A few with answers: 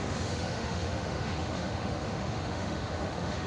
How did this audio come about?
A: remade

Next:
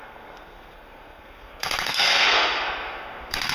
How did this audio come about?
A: remade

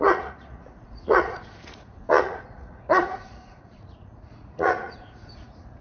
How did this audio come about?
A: remade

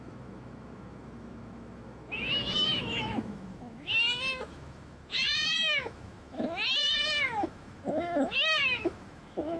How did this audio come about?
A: remade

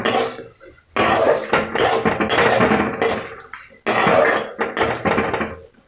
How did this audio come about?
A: recorded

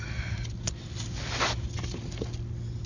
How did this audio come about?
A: recorded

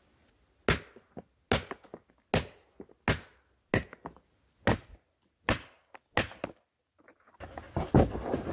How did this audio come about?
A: recorded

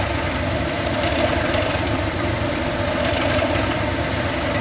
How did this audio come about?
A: remade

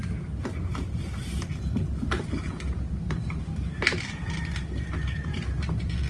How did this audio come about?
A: recorded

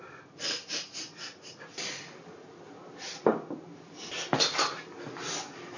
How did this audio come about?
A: recorded